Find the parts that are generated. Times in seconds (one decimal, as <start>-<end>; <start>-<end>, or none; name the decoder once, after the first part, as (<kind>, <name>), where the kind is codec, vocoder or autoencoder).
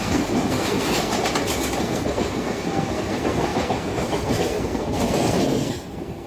0.0-1.1 (codec, SNAC); 1.8-6.3